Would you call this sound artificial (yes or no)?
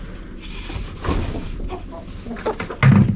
no